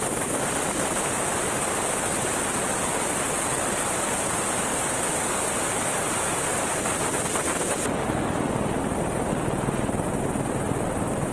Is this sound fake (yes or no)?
no